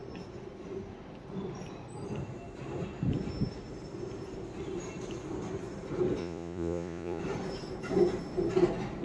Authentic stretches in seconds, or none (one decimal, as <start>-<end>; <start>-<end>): 0.0-6.2; 7.2-9.0